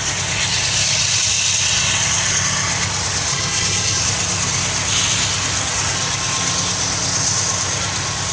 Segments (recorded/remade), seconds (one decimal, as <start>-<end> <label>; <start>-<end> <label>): 0.0-3.3 recorded; 3.3-4.0 remade; 4.0-8.3 recorded

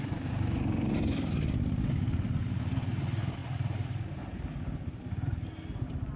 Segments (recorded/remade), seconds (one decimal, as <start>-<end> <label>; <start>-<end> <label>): 0.0-6.2 recorded

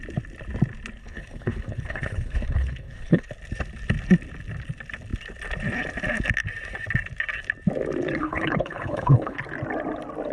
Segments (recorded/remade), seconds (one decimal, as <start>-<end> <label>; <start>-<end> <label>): 0.0-1.0 recorded; 1.0-3.3 remade; 3.3-8.2 recorded; 8.2-9.4 remade; 9.4-10.3 recorded